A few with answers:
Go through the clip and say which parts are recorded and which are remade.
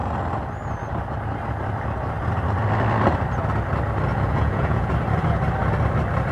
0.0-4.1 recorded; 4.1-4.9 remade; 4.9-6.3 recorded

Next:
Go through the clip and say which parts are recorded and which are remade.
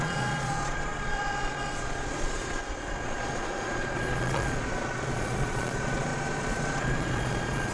0.0-7.7 remade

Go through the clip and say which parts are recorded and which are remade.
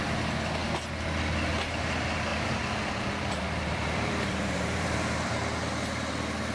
0.0-2.3 recorded; 2.3-5.3 remade; 5.3-6.5 recorded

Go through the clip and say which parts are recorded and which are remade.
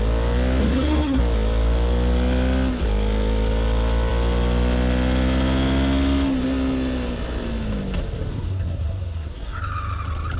0.0-0.6 recorded; 0.6-1.2 remade; 1.2-8.3 recorded; 8.3-9.6 remade; 9.6-10.4 recorded